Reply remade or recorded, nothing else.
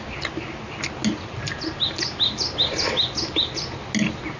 recorded